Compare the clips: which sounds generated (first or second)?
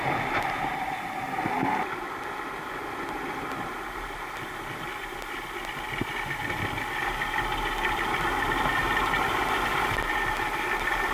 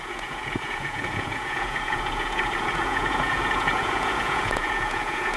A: second